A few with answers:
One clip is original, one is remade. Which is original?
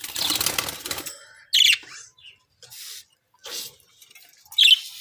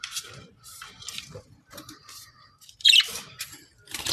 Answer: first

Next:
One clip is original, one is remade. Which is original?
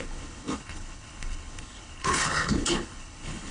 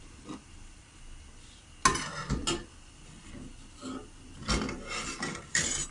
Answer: second